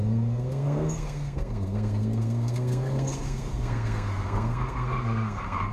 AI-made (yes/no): yes